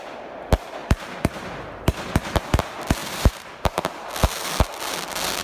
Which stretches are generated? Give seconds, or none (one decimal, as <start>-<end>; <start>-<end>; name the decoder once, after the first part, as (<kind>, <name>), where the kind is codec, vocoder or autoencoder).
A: 0.8-2.6 (vocoder, BigVGAN v2); 3.0-4.1